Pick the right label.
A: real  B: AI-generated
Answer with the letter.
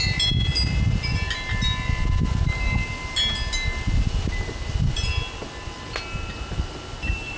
A